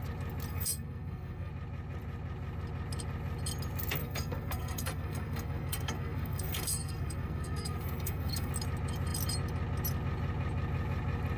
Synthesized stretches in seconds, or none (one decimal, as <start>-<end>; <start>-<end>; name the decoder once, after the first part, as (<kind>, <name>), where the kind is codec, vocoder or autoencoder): 0.5-1.5 (codec, SNAC); 4.0-8.5